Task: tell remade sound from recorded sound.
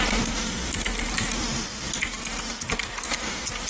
recorded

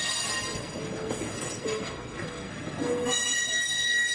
remade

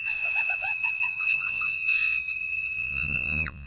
remade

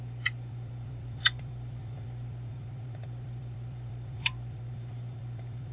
remade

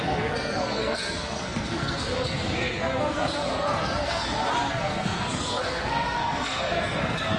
remade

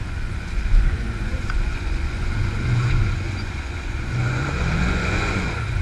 remade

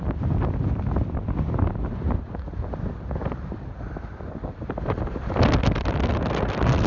recorded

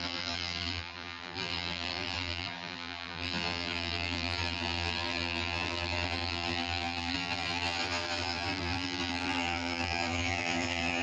remade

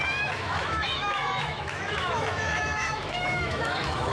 remade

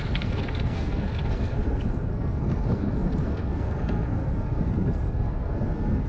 remade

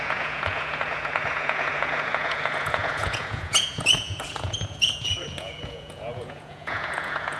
remade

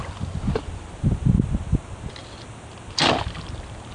recorded